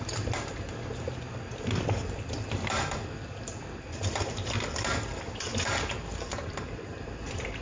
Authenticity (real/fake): fake